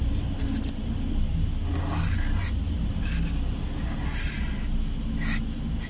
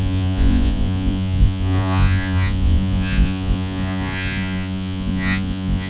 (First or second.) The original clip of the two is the first